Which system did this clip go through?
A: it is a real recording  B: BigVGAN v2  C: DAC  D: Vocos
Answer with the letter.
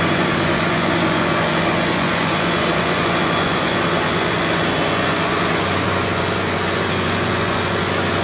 D